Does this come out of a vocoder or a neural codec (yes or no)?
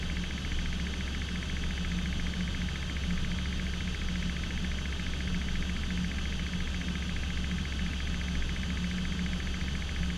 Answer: no